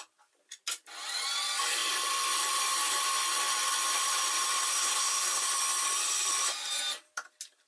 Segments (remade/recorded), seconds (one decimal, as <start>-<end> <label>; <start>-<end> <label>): 0.0-4.7 recorded; 4.7-5.5 remade; 5.5-7.7 recorded